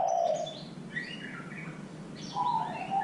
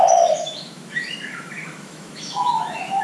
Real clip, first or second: first